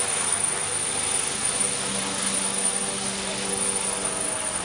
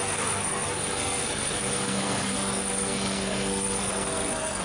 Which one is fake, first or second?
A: second